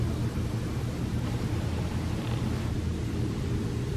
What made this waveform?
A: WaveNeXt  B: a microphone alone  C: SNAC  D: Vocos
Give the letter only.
B